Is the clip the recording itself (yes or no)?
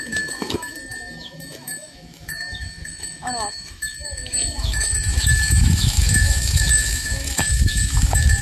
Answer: no